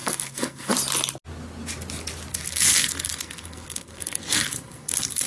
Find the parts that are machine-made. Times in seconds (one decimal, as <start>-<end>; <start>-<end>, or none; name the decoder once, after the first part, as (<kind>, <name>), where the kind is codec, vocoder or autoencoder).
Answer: 0.0-0.7 (codec, SNAC); 2.3-5.3